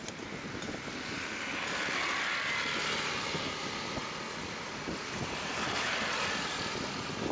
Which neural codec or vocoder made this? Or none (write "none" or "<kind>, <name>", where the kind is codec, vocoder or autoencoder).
none